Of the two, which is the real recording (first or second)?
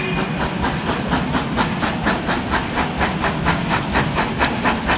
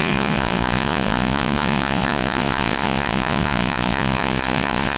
first